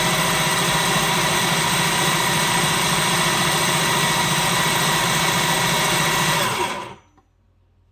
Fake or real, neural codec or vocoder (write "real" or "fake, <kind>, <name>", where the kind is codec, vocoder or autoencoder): real